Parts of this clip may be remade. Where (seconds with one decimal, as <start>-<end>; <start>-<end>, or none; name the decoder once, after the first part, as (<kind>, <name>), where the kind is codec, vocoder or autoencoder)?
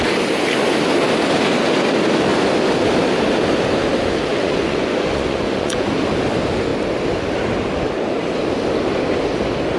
4.3-6.1 (vocoder, Vocos)